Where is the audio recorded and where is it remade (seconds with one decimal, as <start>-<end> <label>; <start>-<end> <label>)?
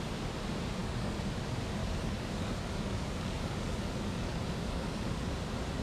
0.0-0.8 recorded; 0.8-1.3 remade; 1.3-1.8 recorded; 1.8-5.3 remade; 5.3-5.8 recorded